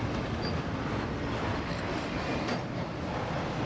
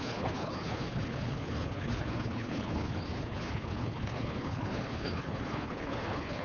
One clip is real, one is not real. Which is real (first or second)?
first